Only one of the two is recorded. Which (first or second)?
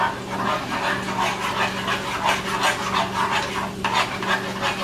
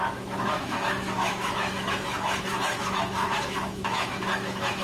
first